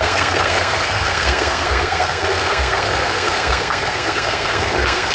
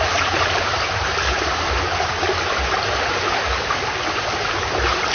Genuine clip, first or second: second